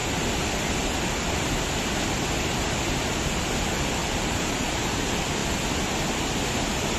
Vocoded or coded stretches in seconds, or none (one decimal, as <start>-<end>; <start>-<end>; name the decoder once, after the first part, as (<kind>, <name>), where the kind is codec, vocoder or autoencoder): 4.0-4.8 (vocoder, BigVGAN v2)